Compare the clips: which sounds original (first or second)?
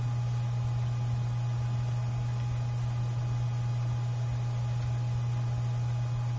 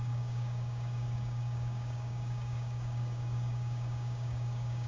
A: first